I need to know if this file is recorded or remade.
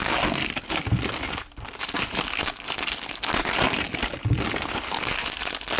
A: recorded